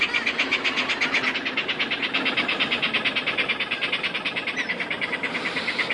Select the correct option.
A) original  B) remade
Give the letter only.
B